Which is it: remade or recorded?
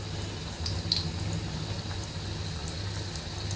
recorded